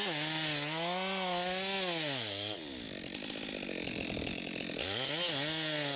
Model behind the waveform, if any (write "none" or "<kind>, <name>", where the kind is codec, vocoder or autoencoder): none